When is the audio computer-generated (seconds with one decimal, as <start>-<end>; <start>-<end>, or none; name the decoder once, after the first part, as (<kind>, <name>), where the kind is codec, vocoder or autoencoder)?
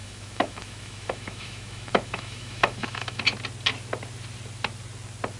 0.0-3.2 (autoencoder, DAC-VAE)